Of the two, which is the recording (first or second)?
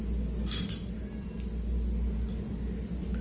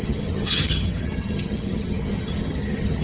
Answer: first